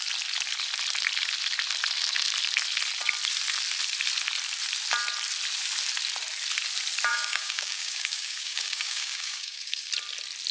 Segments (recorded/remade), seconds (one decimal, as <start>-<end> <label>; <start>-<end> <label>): 0.0-7.1 recorded; 7.1-9.9 remade; 9.9-10.5 recorded